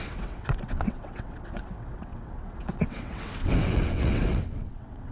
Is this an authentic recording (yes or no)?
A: no